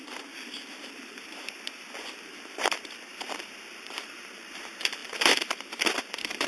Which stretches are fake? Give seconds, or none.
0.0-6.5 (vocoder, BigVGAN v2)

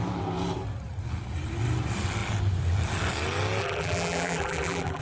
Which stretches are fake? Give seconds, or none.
3.6-5.0 (vocoder, BigVGAN v2)

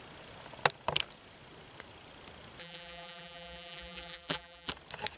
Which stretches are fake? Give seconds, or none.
2.6-4.7 (vocoder, BigVGAN v2)

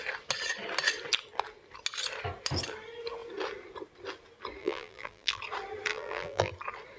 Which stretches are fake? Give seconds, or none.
4.6-5.4 (vocoder, BigVGAN v2); 5.9-6.5

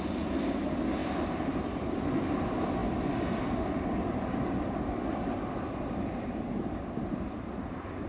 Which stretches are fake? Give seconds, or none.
1.0-2.0 (vocoder, BigVGAN v2)

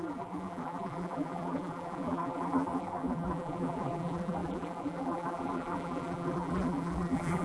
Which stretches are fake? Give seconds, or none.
0.0-7.4 (vocoder, BigVGAN v2)

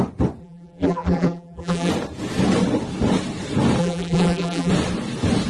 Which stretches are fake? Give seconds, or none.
0.4-1.9 (vocoder, BigVGAN v2); 3.8-4.7

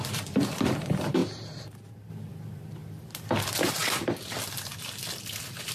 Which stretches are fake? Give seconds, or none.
0.0-1.2 (vocoder, BigVGAN v2); 2.1-2.8; 3.4-5.7